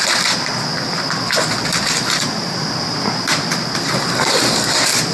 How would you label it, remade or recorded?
recorded